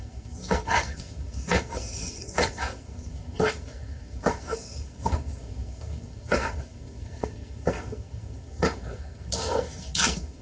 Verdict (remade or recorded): remade